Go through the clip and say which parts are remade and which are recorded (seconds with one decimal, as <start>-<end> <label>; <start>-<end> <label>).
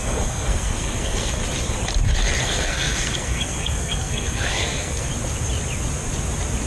0.0-1.4 remade; 1.4-2.4 recorded; 2.4-5.1 remade; 5.1-6.7 recorded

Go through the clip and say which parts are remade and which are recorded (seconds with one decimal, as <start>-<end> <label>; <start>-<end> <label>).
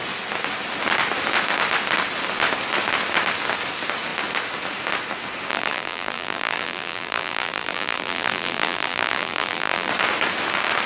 0.0-5.5 recorded; 5.5-9.9 remade; 9.9-10.9 recorded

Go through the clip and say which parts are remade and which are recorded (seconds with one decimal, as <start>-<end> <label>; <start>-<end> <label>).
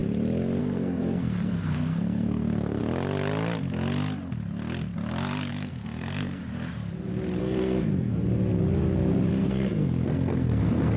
0.0-0.6 recorded; 0.6-2.8 remade; 2.8-5.5 recorded; 5.5-6.4 remade; 6.4-7.4 recorded; 7.4-8.1 remade; 8.1-9.3 recorded; 9.3-11.0 remade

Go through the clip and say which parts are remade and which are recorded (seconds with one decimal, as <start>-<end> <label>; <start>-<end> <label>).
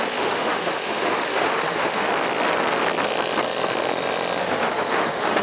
0.0-2.1 remade; 2.1-4.4 recorded; 4.4-5.4 remade